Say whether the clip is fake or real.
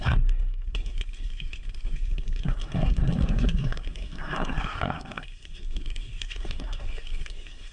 fake